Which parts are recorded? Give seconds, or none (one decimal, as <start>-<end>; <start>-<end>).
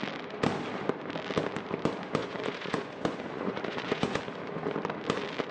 0.0-2.2; 4.2-5.5